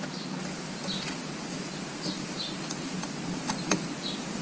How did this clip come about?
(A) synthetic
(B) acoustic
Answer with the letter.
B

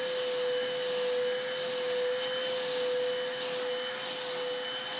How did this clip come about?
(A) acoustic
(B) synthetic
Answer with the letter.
A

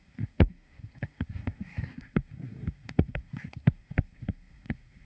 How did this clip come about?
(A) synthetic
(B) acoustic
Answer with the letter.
A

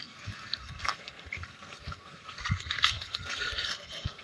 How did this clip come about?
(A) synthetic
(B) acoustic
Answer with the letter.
A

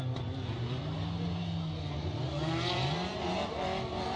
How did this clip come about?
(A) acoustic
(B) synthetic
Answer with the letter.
A